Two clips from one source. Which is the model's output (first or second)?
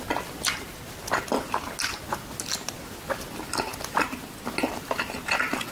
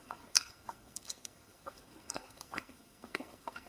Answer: second